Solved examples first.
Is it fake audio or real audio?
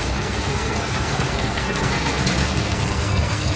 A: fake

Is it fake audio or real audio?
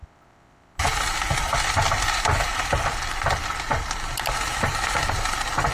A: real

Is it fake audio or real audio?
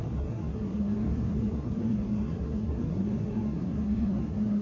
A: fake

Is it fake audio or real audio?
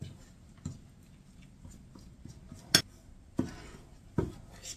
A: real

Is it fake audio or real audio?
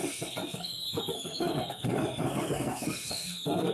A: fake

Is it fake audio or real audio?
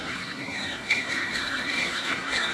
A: fake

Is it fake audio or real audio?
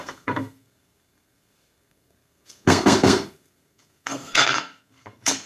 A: fake